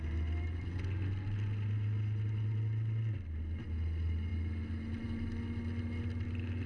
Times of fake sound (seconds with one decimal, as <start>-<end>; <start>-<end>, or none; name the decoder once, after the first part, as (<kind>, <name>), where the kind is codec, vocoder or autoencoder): none